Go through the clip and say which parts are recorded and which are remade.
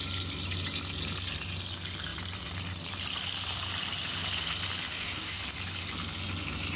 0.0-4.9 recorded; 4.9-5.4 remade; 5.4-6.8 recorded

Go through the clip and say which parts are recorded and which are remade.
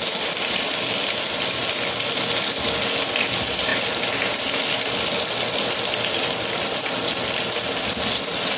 0.0-8.6 recorded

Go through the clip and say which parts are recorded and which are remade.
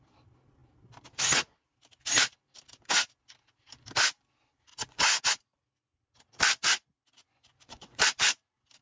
0.0-4.7 recorded; 4.7-5.2 remade; 5.2-7.2 recorded; 7.2-8.0 remade; 8.0-8.8 recorded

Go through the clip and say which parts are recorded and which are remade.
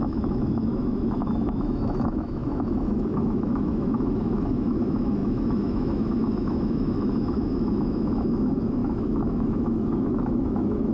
0.0-10.9 remade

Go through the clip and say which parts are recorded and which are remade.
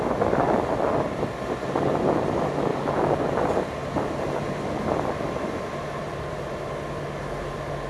0.0-6.0 recorded; 6.0-6.5 remade; 6.5-7.9 recorded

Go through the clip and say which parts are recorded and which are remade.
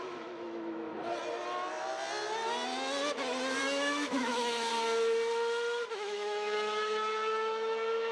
0.0-0.9 remade; 0.9-3.6 recorded; 3.6-4.7 remade; 4.7-5.9 recorded; 5.9-8.1 remade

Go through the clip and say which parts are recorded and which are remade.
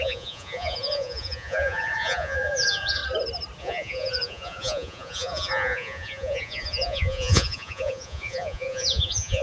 0.0-3.0 remade; 3.0-3.6 recorded; 3.6-9.4 remade